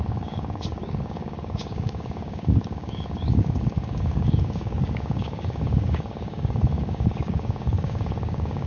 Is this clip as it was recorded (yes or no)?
no